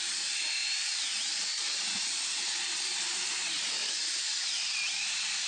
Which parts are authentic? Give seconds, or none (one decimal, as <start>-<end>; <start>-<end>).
none